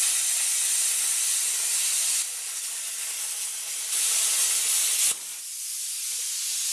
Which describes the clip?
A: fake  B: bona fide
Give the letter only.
B